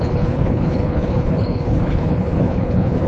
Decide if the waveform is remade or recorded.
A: remade